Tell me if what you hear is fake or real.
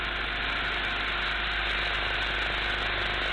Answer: real